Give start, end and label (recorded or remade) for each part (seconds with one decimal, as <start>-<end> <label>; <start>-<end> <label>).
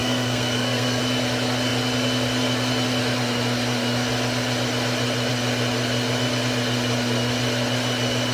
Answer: 0.0-1.0 remade; 1.0-8.3 recorded